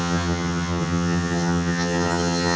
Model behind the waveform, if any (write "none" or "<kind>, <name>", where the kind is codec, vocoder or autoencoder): vocoder, HiFi-GAN